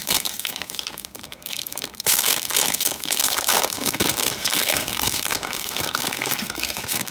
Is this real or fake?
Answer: fake